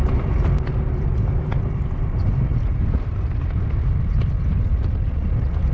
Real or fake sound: real